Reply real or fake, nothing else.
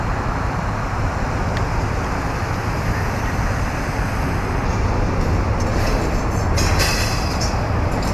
real